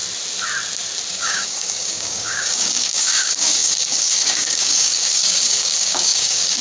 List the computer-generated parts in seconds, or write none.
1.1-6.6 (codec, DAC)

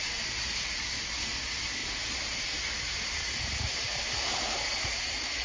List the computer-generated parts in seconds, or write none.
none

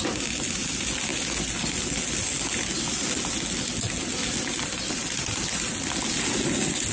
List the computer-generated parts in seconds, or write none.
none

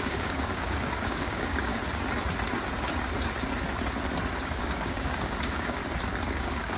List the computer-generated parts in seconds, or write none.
0.0-1.7 (codec, DAC); 4.6-5.8; 6.3-6.8

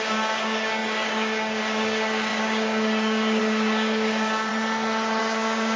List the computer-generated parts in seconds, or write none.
0.0-4.5 (codec, DAC); 5.2-5.8

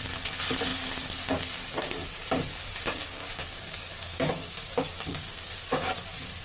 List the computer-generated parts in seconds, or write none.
2.5-5.6 (codec, DAC)

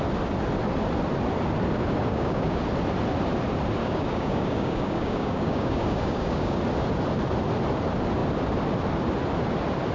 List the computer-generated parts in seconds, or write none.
2.1-2.6 (codec, DAC); 3.8-6.6

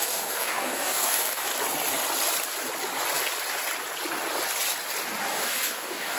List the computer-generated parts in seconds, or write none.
0.0-1.5 (codec, DAC); 5.2-6.2